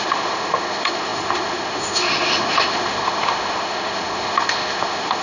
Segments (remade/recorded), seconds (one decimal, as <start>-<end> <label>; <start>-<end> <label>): 0.0-5.2 remade